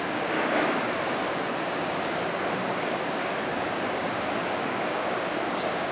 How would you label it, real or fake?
fake